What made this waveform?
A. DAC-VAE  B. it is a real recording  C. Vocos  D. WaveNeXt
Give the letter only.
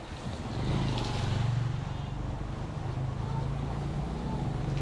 B